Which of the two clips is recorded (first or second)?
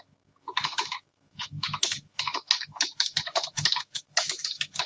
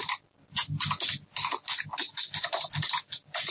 second